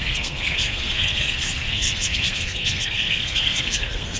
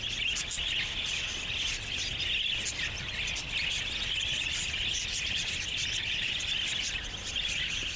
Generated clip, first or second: first